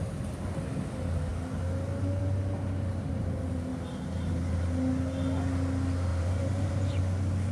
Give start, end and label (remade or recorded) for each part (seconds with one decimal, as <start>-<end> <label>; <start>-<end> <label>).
0.0-6.1 recorded; 6.1-7.0 remade; 7.0-7.5 recorded